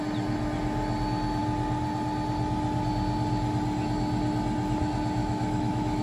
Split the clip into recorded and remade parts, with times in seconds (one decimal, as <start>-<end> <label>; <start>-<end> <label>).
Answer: 0.0-5.2 recorded; 5.2-6.0 remade